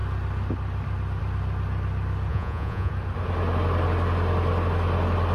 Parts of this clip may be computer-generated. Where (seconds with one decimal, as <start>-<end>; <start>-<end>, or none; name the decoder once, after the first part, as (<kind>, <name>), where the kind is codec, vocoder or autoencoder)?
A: 2.3-2.9 (vocoder, Vocos)